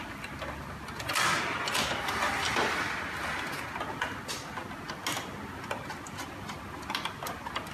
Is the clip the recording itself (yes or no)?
yes